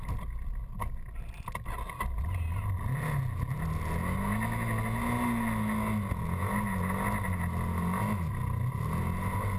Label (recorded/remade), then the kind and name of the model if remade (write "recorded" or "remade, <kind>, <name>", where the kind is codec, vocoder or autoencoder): recorded